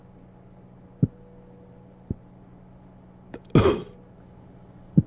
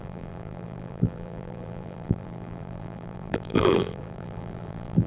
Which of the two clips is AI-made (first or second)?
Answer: second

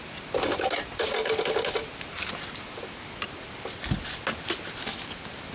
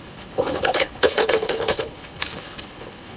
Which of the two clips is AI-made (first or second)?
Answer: second